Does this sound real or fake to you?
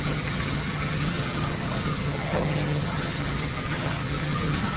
fake